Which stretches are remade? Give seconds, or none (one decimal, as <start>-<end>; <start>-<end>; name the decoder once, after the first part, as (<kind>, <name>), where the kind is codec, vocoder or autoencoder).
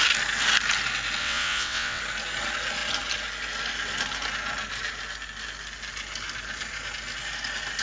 1.2-2.0 (vocoder, WaveNeXt)